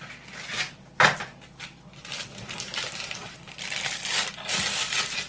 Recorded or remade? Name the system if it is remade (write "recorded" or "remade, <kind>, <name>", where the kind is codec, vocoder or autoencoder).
recorded